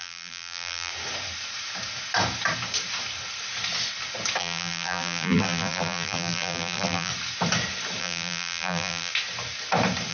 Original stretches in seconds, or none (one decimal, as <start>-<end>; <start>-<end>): 0.9-4.4; 7.1-8.0; 9.1-10.1